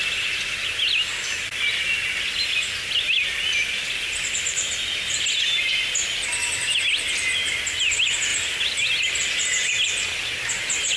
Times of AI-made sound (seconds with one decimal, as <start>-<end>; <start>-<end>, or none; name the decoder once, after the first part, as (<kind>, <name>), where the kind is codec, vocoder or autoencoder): 8.3-9.0 (vocoder, BigVGAN v2)